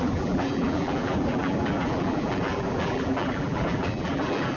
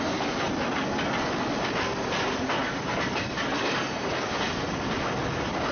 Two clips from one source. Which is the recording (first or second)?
second